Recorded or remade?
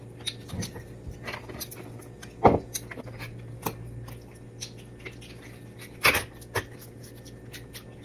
recorded